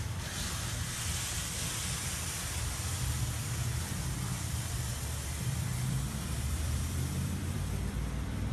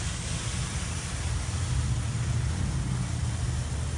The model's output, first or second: first